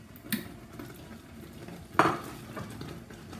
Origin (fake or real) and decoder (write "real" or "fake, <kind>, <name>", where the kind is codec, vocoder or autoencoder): real